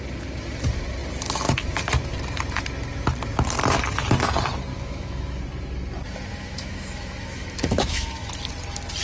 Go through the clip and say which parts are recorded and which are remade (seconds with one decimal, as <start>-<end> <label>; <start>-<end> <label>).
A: 0.0-4.7 recorded; 4.7-5.4 remade; 5.4-6.3 recorded; 6.3-8.3 remade; 8.3-9.0 recorded